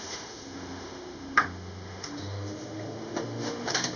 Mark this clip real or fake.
fake